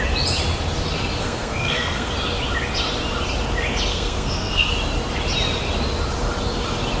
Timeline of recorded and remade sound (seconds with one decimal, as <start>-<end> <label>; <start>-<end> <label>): 0.0-1.2 recorded; 1.2-2.1 remade; 2.1-3.9 recorded; 3.9-4.7 remade; 4.7-7.0 recorded